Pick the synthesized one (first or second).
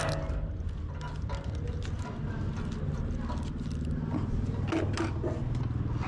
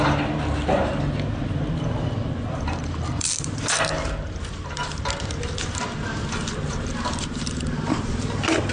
second